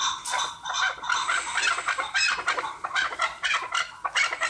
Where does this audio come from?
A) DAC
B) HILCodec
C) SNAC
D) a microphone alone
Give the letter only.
D